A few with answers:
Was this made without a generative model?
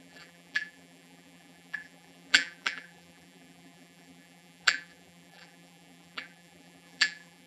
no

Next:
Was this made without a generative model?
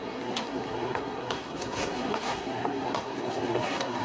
no